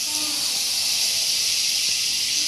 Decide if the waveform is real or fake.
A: real